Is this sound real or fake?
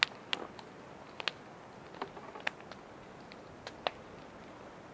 real